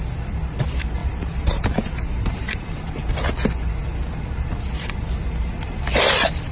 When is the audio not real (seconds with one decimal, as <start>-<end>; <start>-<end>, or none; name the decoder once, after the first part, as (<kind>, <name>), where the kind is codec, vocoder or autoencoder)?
1.0-3.1 (vocoder, BigVGAN v2)